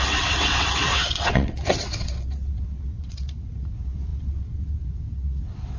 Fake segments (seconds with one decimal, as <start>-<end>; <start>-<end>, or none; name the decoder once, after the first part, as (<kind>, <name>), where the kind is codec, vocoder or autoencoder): 0.0-5.8 (vocoder, WaveNeXt)